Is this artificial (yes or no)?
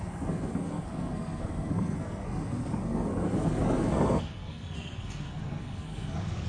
yes